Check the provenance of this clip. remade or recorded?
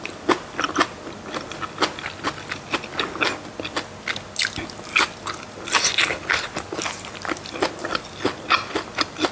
recorded